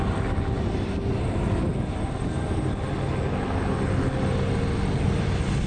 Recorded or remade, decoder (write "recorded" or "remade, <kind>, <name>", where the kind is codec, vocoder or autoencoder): recorded